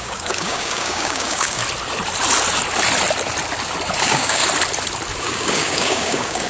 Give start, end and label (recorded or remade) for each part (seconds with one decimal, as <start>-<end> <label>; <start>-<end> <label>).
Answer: 0.0-1.6 remade; 1.6-4.0 recorded; 4.0-4.4 remade; 4.4-5.2 recorded; 5.2-6.5 remade